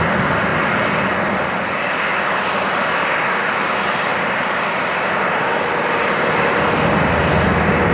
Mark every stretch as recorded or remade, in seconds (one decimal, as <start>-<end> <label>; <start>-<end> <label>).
0.0-0.5 recorded; 0.5-1.7 remade; 1.7-2.1 recorded; 2.1-3.3 remade; 3.3-4.1 recorded; 4.1-7.2 remade; 7.2-7.9 recorded